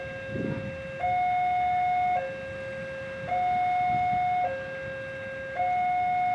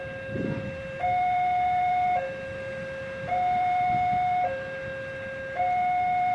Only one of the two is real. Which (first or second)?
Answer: first